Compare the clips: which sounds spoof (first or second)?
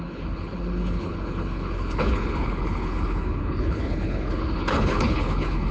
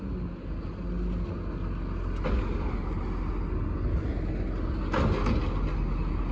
first